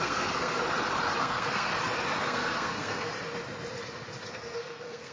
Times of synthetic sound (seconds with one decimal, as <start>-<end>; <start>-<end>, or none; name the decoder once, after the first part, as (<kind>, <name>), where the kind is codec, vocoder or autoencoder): 0.0-0.6 (codec, SNAC); 1.2-1.7; 2.2-3.1; 4.3-5.1